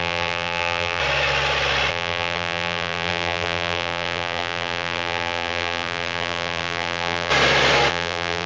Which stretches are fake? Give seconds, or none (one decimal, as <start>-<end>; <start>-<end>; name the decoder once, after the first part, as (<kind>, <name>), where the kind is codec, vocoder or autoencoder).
0.0-1.0 (vocoder, BigVGAN v2); 1.9-7.3; 7.9-8.5